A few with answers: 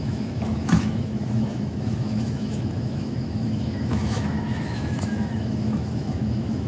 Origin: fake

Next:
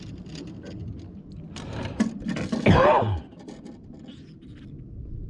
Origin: real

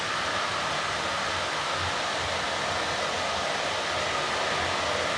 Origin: real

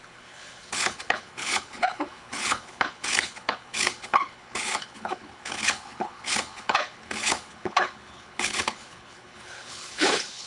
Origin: fake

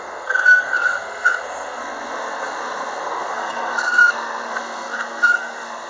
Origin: fake